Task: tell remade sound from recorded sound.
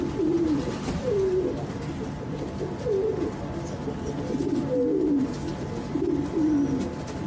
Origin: recorded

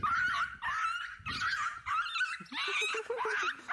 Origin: recorded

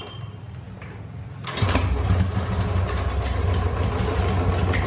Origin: recorded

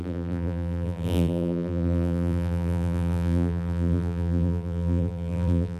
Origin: remade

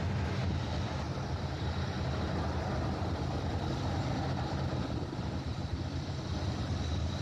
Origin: remade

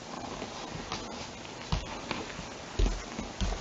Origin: recorded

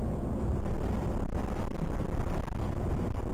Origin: recorded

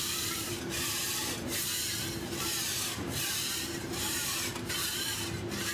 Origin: remade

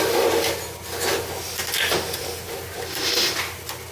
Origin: recorded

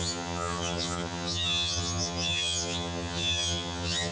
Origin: remade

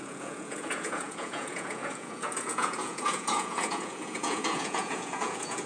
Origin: remade